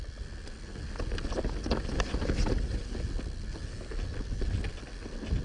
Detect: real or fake real